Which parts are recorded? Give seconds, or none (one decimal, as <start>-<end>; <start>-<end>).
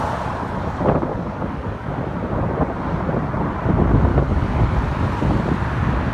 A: 0.0-1.1; 1.9-4.1; 4.6-6.1